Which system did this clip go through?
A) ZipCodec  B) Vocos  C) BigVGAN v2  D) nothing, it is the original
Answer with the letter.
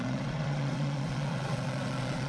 B